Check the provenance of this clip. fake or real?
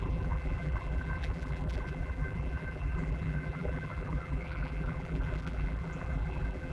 fake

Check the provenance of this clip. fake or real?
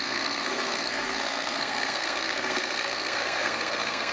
fake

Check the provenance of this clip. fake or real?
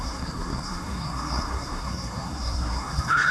fake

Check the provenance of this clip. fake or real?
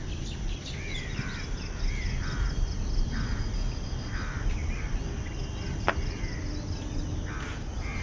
real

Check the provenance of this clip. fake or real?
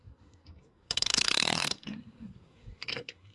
fake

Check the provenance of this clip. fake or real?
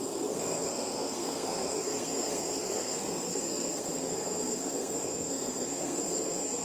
fake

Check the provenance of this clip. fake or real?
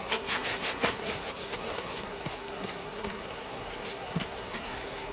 fake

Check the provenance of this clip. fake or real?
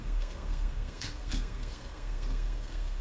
fake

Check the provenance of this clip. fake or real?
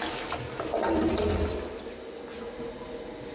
real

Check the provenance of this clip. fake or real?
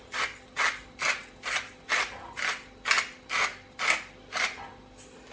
real